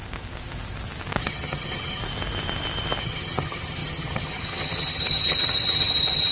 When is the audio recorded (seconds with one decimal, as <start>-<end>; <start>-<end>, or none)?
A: 0.0-1.2; 2.0-3.0